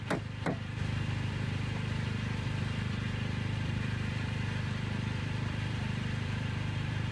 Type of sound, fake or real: fake